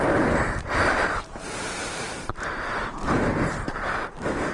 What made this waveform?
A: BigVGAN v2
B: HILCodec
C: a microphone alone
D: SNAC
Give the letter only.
C